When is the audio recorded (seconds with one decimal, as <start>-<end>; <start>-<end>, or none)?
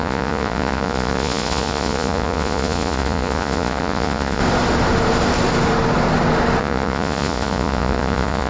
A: 4.4-6.6